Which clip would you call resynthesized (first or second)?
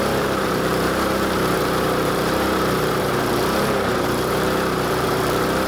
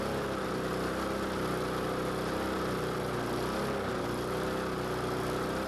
first